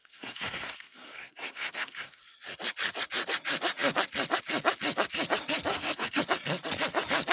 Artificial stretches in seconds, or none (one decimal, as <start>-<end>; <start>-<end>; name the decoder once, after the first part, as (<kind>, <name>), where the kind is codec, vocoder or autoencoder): 0.0-2.2 (codec, SNAC); 5.7-6.2